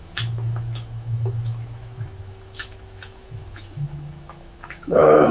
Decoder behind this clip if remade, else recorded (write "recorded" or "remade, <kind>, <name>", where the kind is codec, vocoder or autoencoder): remade, autoencoder, DAC-VAE